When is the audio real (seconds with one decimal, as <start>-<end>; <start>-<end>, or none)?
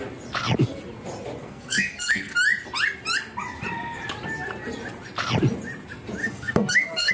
0.0-1.4; 2.3-6.2